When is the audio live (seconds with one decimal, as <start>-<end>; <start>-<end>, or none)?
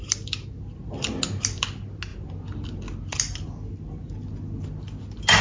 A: 0.0-5.4